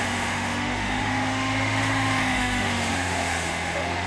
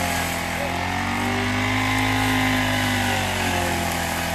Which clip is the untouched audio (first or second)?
second